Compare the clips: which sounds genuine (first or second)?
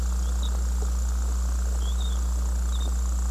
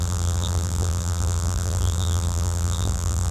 first